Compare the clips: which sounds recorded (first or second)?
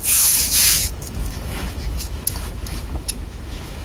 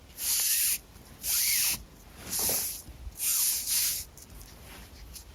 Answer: second